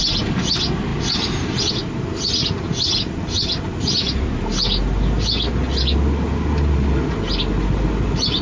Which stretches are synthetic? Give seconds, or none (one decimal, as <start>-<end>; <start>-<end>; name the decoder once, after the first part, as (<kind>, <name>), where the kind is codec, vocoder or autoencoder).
none